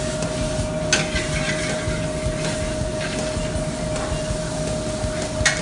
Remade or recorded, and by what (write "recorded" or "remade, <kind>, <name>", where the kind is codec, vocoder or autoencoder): recorded